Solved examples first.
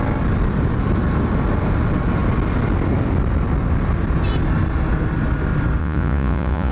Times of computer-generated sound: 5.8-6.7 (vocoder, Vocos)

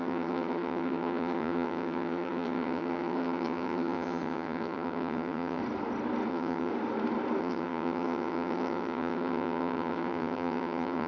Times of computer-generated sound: 0.0-5.6 (vocoder, HiFi-GAN); 6.3-6.7; 7.4-11.1

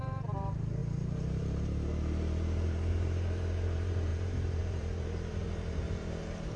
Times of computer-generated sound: 0.0-6.6 (vocoder, BigVGAN v2)